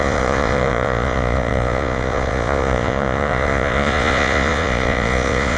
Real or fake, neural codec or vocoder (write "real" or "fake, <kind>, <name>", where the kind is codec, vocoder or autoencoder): fake, vocoder, Vocos